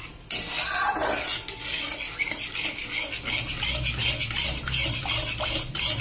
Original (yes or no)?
yes